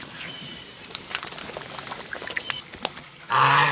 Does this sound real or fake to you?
real